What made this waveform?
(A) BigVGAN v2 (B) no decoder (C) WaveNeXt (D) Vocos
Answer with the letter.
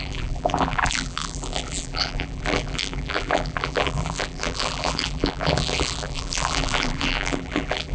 A